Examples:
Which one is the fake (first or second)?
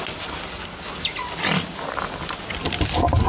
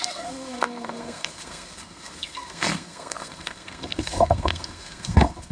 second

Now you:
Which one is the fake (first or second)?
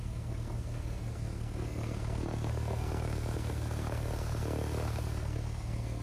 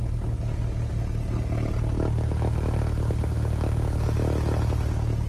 first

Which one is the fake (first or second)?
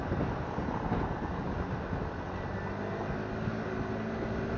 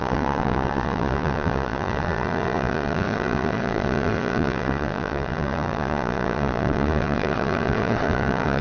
second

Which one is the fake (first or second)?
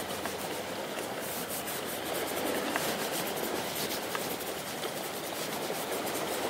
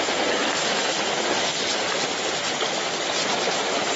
first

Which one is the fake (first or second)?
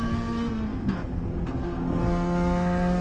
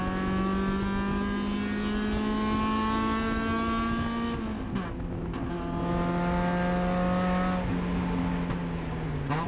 first